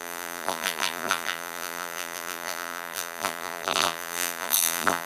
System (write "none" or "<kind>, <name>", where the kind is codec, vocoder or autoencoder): vocoder, BigVGAN v2